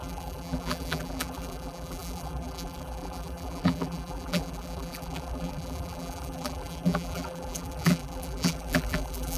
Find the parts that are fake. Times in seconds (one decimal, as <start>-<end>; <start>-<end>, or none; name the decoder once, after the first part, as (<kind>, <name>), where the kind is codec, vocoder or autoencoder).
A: 0.0-9.4 (vocoder, BigVGAN v2)